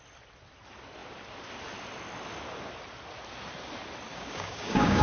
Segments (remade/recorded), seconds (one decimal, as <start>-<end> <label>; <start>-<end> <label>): 0.0-4.1 recorded; 4.1-5.0 remade